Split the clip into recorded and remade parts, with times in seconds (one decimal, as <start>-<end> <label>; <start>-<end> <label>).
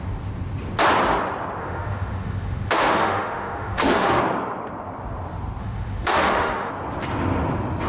0.0-1.6 recorded; 1.6-4.2 remade; 4.2-5.6 recorded; 5.6-6.7 remade; 6.7-7.9 recorded